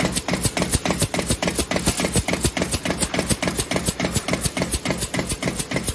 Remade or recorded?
recorded